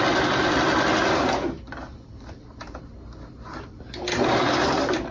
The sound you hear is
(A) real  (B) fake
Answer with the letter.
A